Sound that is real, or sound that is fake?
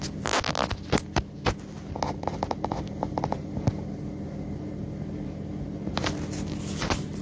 real